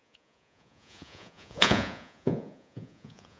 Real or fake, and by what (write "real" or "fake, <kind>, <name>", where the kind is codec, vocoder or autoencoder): fake, vocoder, Vocos